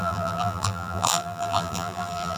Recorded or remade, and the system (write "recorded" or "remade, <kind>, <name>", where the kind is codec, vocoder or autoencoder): remade, vocoder, BigVGAN v2